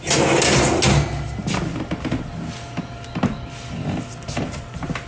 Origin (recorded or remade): recorded